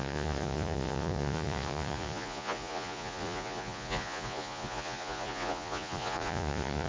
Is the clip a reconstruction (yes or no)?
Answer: yes